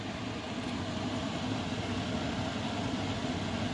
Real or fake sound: real